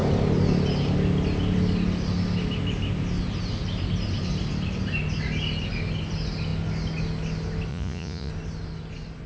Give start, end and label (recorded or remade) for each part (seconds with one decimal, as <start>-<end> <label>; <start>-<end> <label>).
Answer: 0.0-7.7 recorded; 7.7-8.3 remade; 8.3-9.3 recorded